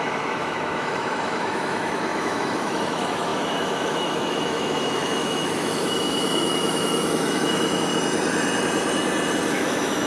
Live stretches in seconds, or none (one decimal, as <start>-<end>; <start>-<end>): 7.9-9.5